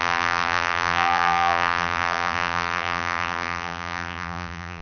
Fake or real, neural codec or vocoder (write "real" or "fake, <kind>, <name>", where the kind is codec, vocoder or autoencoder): fake, vocoder, BigVGAN v2